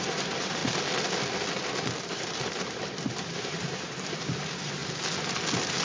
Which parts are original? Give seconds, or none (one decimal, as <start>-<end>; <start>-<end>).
0.6-2.0; 4.8-5.8